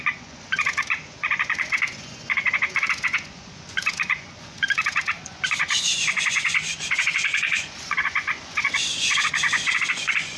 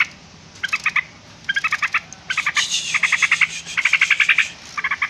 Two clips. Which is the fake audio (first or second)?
first